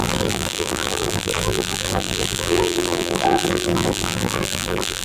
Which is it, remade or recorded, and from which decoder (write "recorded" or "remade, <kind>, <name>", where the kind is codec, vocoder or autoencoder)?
remade, vocoder, BigVGAN v2